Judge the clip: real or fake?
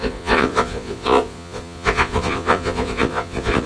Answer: fake